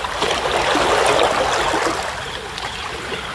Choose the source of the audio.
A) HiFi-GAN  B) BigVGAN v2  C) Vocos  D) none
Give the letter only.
D